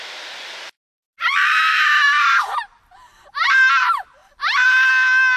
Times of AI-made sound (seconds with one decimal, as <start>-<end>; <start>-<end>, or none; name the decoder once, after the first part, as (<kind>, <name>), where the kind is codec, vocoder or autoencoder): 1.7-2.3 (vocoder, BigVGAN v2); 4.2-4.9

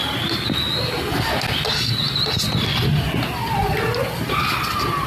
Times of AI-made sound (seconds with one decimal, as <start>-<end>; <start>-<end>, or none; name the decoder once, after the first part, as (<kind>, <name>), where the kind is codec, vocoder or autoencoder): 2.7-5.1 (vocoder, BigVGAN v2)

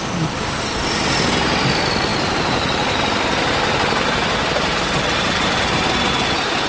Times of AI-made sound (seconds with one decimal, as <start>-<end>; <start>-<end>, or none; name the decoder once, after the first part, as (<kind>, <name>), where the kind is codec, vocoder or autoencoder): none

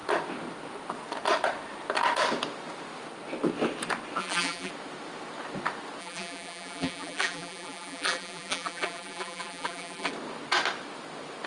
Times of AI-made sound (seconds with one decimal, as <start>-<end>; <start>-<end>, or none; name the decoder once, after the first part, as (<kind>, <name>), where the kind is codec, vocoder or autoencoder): 4.2-4.7 (vocoder, BigVGAN v2); 6.0-10.1

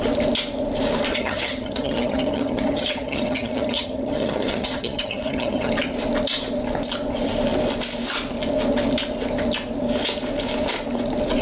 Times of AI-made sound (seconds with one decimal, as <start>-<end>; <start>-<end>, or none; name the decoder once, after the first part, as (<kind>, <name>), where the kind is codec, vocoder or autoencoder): 1.1-5.7 (vocoder, HiFi-GAN)